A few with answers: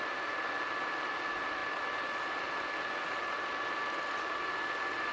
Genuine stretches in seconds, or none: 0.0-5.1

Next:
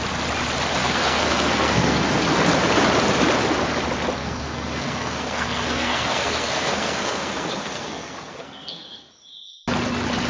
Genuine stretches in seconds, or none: 0.0-0.8; 2.0-4.2; 9.1-10.3

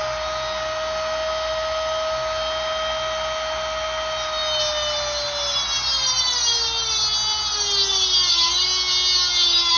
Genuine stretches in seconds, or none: 0.0-9.8